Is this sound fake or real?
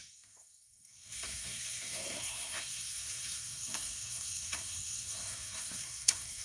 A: fake